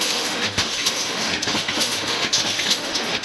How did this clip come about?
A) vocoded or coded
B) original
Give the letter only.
A